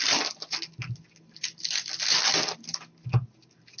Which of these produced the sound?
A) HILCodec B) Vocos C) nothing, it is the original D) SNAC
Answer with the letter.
C